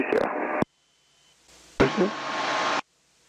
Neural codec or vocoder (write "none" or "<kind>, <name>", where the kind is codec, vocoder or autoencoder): none